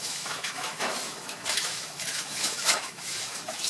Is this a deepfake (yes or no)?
yes